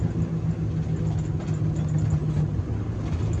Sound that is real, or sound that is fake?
real